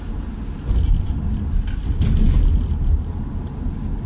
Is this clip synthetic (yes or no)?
no